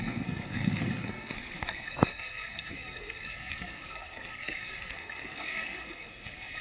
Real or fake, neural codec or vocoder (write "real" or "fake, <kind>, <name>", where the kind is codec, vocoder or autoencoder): fake, codec, SNAC